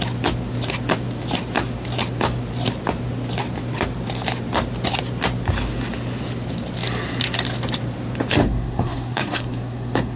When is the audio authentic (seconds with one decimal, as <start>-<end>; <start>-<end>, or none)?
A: 0.0-8.4